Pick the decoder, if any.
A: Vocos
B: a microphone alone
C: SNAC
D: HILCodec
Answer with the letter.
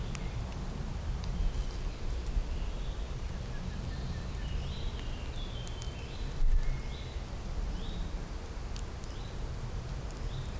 B